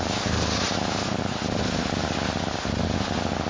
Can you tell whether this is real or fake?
real